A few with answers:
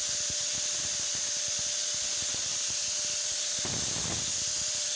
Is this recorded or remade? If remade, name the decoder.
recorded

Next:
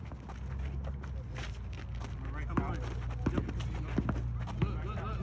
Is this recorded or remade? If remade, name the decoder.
recorded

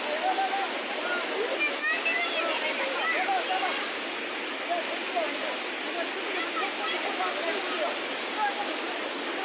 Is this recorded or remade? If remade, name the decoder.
recorded